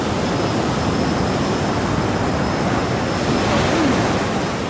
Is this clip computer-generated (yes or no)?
no